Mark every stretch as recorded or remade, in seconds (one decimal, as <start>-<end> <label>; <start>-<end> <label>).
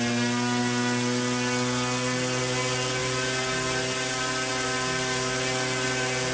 0.0-6.3 recorded